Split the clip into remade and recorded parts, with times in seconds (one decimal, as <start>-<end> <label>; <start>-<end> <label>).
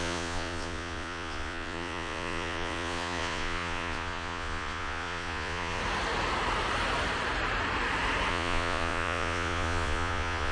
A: 0.0-5.8 remade; 5.8-8.3 recorded; 8.3-10.5 remade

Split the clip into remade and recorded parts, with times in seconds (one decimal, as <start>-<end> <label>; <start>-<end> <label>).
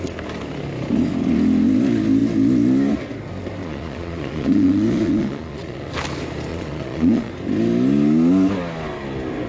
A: 0.0-3.6 recorded; 3.6-5.9 remade; 5.9-6.5 recorded; 6.5-7.3 remade; 7.3-9.5 recorded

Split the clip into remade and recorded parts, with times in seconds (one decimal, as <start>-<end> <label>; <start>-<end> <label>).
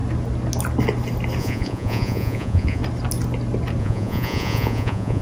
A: 0.0-1.4 recorded; 1.4-2.8 remade; 2.8-3.8 recorded; 3.8-5.2 remade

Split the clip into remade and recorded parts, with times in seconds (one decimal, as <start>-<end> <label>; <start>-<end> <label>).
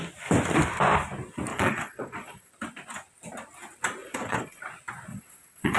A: 0.0-1.5 recorded; 1.5-2.5 remade; 2.5-4.0 recorded; 4.0-4.6 remade; 4.6-5.1 recorded; 5.1-5.8 remade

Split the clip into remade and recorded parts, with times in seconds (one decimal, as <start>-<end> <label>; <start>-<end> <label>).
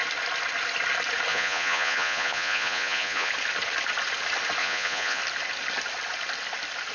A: 0.0-1.3 recorded; 1.3-3.3 remade; 3.3-4.6 recorded; 4.6-5.2 remade; 5.2-6.9 recorded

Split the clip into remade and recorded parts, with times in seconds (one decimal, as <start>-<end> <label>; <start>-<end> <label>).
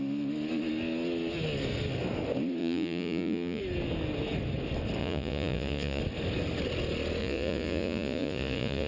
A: 0.0-2.6 recorded; 2.6-3.6 remade; 3.6-5.0 recorded; 5.0-6.0 remade; 6.0-7.2 recorded; 7.2-8.9 remade